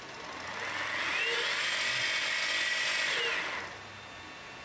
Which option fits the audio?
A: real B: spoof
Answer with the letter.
A